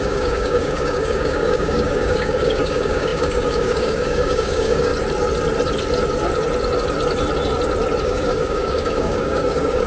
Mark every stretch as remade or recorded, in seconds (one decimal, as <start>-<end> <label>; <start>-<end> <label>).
0.0-4.9 remade; 4.9-8.0 recorded; 8.0-9.9 remade